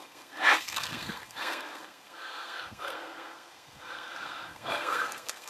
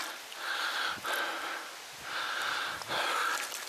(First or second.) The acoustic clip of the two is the second